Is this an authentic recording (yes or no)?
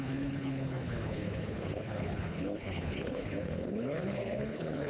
no